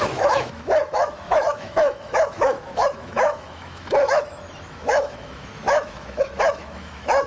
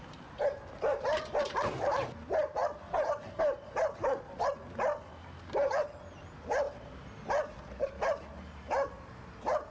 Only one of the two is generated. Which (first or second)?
first